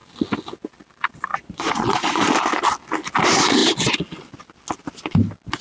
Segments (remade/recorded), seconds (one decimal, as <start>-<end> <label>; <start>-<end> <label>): 0.0-1.3 recorded; 1.3-2.3 remade; 2.3-5.6 recorded